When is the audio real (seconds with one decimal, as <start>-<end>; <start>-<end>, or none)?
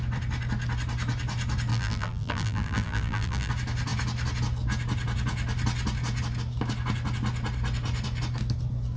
0.0-1.7; 3.5-9.0